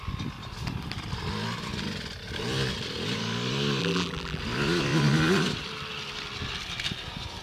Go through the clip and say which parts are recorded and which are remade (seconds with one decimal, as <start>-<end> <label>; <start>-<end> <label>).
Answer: 0.0-3.8 recorded; 3.8-4.4 remade; 4.4-7.4 recorded